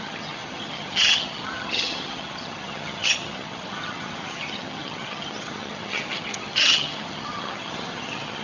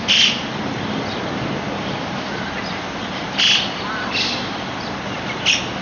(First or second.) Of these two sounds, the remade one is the first